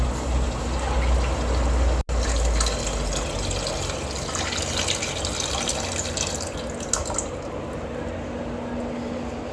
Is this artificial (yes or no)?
no